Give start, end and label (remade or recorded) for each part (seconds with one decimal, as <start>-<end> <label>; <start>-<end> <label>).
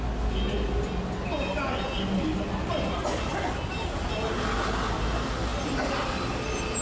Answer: 0.0-6.8 recorded